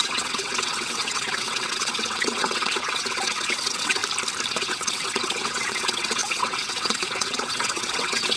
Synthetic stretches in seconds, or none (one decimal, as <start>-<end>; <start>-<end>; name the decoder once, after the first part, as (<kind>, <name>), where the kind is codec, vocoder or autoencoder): 0.0-4.0 (vocoder, WaveNeXt); 4.5-8.4